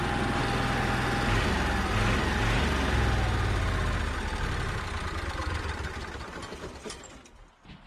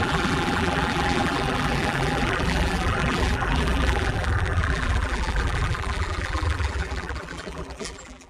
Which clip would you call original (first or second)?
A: first